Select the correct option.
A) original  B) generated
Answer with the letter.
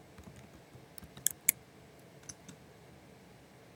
A